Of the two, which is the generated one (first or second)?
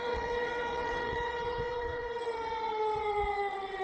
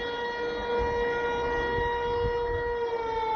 first